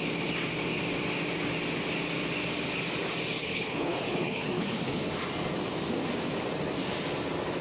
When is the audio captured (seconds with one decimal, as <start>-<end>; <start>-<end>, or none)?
0.0-3.4; 5.1-7.6